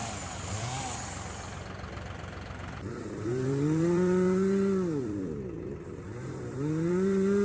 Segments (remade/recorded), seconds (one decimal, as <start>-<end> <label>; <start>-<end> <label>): 0.0-7.4 remade